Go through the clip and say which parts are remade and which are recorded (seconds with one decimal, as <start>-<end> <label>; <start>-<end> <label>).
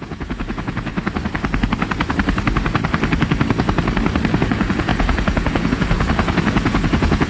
0.0-0.9 remade; 0.9-4.4 recorded; 4.4-7.3 remade